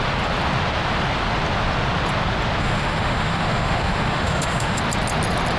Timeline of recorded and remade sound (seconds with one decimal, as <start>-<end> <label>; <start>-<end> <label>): 0.0-2.6 recorded; 2.6-4.8 remade; 4.8-5.6 recorded